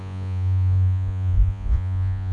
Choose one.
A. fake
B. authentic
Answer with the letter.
A